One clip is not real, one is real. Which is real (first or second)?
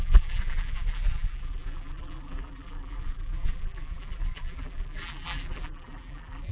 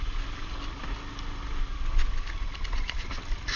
second